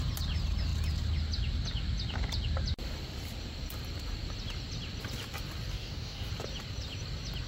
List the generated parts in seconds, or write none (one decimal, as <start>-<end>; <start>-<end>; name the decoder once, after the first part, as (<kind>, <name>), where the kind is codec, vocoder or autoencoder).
5.7-6.3 (codec, DAC)